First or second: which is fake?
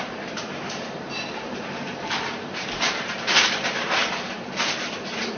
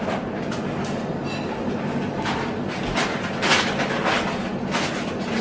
first